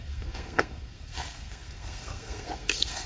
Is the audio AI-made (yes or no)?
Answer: yes